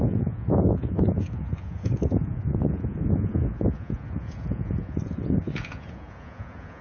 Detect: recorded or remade remade